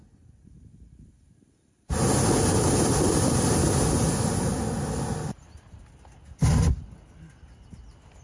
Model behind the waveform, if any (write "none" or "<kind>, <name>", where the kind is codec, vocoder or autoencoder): none